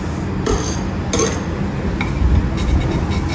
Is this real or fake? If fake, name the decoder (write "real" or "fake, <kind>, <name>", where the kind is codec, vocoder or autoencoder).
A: real